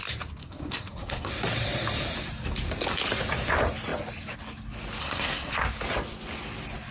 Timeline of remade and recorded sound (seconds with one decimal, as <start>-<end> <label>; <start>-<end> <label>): 0.0-0.4 recorded; 0.4-1.3 remade; 1.3-5.0 recorded; 5.0-5.5 remade; 5.5-6.9 recorded